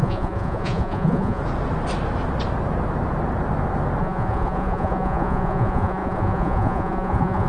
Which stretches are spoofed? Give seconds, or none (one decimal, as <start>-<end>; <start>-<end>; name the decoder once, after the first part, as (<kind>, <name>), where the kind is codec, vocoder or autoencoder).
0.0-1.4 (vocoder, Vocos); 4.0-7.5